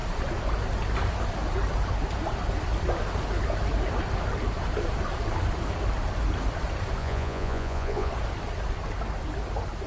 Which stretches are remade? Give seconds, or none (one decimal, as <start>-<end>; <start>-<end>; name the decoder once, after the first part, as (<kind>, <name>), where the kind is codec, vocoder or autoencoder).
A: 7.0-8.1 (vocoder, Vocos)